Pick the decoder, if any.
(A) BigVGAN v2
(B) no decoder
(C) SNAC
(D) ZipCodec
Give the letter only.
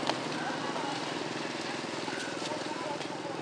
B